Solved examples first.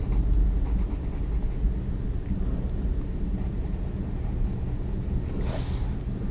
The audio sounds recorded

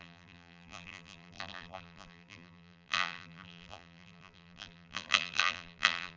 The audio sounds remade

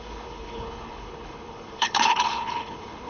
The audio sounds remade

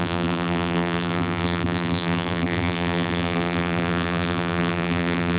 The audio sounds remade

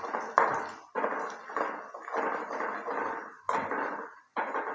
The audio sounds recorded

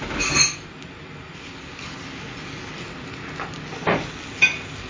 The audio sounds recorded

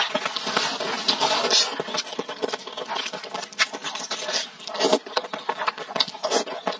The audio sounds recorded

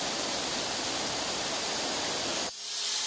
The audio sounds recorded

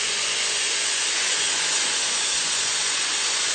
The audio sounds remade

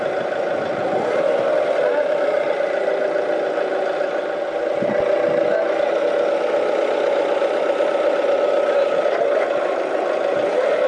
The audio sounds recorded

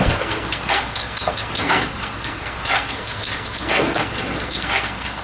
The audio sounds remade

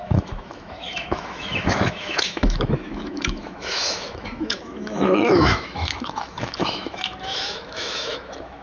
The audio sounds remade